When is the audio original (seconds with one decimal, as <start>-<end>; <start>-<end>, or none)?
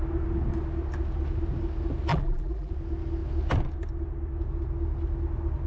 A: 0.0-2.1; 2.7-5.7